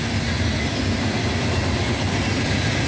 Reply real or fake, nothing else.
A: real